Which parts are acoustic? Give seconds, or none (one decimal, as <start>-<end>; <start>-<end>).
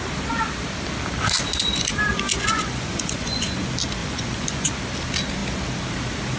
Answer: 0.0-2.3; 3.5-4.0; 4.7-6.4